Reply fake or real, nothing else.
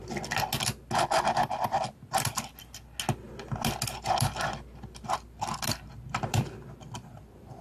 real